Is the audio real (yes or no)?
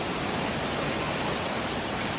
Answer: yes